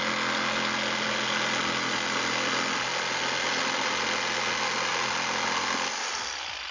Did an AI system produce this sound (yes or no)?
no